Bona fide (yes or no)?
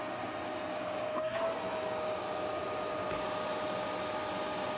yes